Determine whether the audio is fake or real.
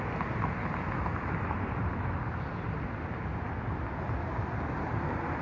real